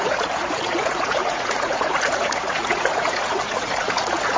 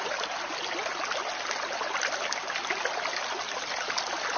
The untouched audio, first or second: second